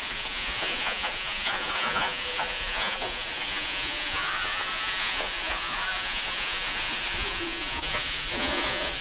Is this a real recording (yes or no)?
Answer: no